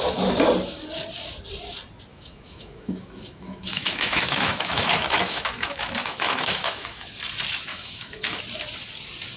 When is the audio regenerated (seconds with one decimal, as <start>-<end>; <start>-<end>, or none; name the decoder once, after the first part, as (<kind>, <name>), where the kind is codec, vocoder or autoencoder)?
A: 2.1-7.1 (autoencoder, DAC-VAE); 7.7-8.4